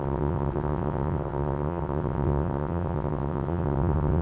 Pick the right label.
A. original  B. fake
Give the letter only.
B